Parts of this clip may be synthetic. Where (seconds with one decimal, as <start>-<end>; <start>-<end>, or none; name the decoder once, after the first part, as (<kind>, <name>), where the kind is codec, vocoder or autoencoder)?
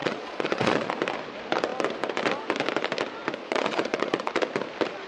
0.0-0.9 (vocoder, Vocos); 3.4-4.3